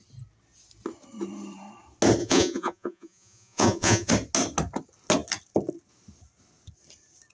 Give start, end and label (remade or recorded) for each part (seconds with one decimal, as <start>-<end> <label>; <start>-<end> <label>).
0.0-2.2 recorded; 2.2-4.1 remade; 4.1-7.3 recorded